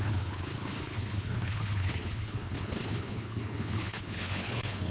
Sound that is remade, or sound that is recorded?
remade